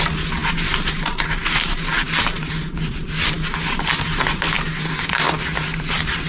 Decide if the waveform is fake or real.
real